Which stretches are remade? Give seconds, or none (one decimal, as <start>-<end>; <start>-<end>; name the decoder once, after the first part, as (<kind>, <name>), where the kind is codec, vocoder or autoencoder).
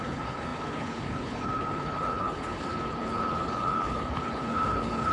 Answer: 0.0-5.1 (codec, HILCodec)